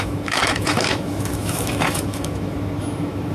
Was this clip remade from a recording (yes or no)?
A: yes